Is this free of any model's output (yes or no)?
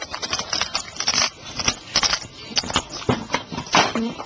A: yes